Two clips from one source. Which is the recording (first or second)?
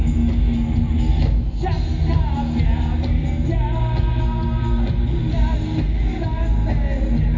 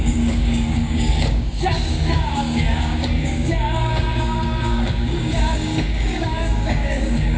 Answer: first